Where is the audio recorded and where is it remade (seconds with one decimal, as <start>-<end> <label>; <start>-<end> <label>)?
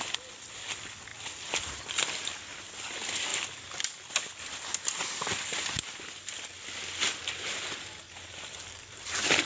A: 0.0-9.5 recorded